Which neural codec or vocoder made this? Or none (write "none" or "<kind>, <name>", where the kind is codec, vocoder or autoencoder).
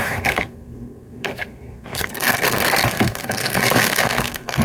codec, SNAC